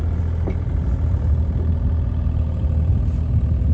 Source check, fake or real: real